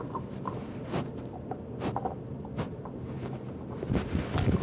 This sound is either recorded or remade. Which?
recorded